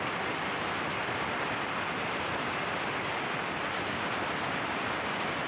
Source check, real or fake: fake